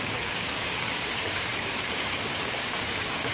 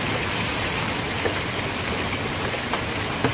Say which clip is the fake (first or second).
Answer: first